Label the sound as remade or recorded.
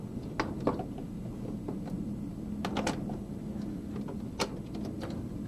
recorded